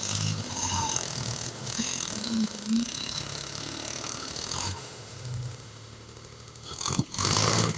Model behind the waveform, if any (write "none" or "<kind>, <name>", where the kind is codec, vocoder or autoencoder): autoencoder, DAC-VAE